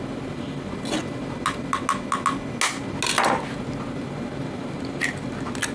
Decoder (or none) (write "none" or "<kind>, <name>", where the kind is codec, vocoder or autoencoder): none